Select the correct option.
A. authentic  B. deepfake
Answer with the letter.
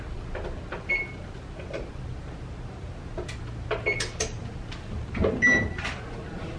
A